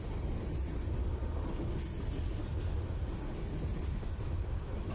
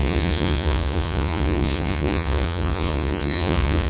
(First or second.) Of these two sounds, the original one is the first